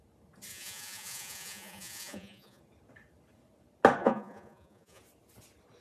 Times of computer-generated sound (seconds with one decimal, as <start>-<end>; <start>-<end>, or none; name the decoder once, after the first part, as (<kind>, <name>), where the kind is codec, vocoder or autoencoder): 0.5-2.6 (vocoder, Vocos); 4.0-5.0